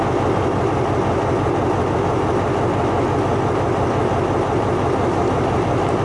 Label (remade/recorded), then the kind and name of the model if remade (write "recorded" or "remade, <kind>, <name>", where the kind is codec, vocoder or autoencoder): recorded